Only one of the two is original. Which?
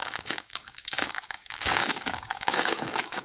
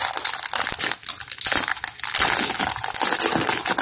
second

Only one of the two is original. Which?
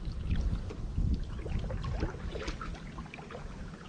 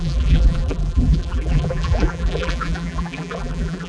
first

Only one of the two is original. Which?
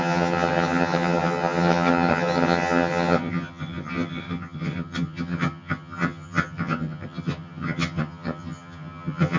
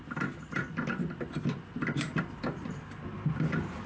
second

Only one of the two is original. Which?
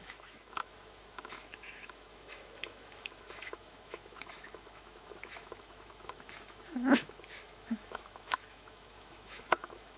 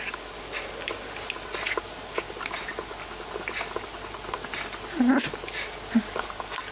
second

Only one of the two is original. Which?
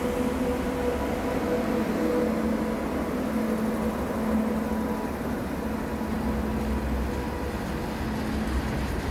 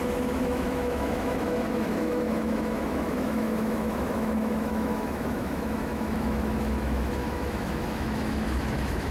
first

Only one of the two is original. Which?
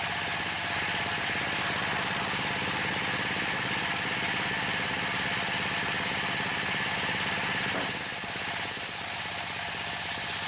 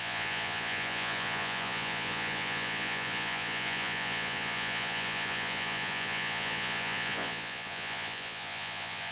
first